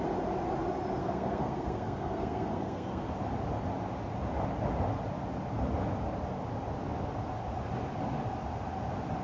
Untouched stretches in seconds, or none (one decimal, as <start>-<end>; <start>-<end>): 0.0-1.0; 3.1-9.2